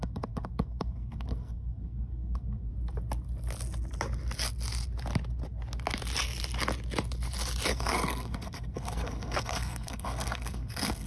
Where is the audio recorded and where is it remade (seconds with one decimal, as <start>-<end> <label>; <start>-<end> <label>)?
0.0-2.7 remade; 2.7-7.7 recorded; 7.7-11.1 remade